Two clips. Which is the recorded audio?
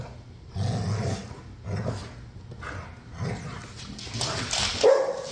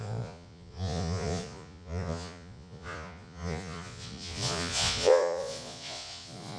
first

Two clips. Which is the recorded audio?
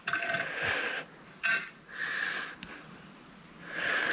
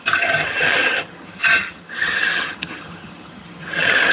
first